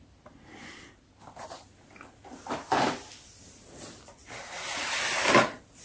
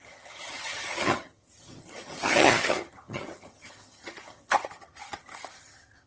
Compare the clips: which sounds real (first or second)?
first